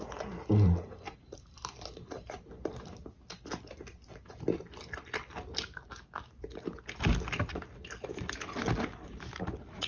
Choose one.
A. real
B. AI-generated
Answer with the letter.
A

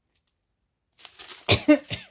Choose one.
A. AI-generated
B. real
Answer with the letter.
B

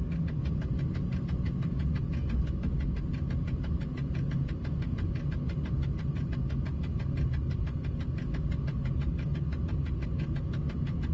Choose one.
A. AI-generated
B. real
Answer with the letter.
B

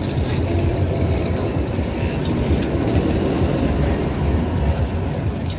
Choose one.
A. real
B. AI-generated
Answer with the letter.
A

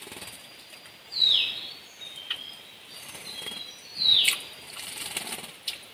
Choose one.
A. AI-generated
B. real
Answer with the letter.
B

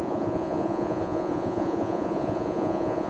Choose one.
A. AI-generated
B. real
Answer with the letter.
A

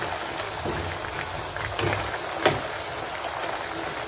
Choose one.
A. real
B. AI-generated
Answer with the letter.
A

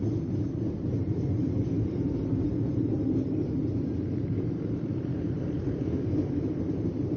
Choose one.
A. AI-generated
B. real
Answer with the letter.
A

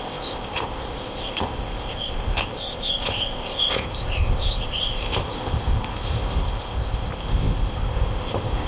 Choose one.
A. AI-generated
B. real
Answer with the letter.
A